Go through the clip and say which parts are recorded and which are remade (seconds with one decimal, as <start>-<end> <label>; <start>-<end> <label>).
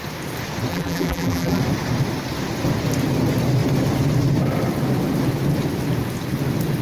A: 0.0-0.7 recorded; 0.7-1.6 remade; 1.6-6.8 recorded